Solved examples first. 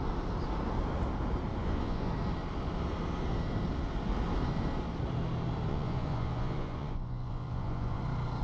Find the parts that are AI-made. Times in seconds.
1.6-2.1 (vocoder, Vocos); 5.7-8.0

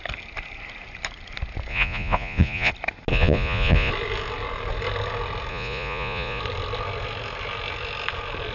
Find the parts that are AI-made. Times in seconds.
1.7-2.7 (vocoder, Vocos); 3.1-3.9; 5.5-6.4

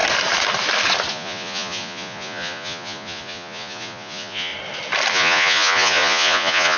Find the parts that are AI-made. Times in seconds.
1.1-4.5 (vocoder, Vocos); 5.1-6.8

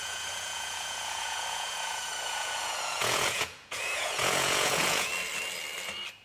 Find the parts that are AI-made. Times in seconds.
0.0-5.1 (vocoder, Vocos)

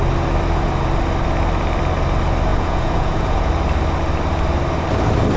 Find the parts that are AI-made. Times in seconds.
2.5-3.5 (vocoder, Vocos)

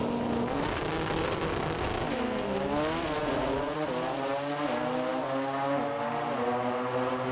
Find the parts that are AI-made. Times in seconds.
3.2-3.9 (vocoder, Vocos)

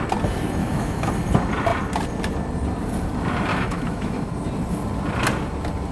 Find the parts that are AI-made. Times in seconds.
0.6-1.1 (autoencoder, DAC-VAE); 3.5-4.3